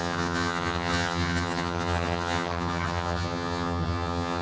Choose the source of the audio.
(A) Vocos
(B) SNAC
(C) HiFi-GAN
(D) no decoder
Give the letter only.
C